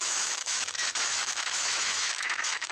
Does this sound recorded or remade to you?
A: remade